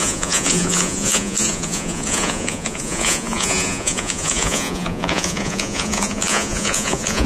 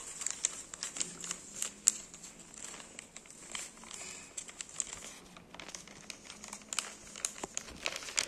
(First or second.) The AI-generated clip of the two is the first